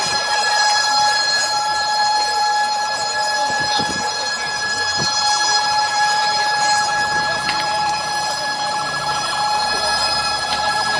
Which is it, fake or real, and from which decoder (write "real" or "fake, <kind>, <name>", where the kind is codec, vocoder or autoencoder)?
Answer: fake, vocoder, BigVGAN v2